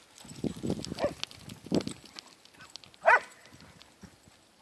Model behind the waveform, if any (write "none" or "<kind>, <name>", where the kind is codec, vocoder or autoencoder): none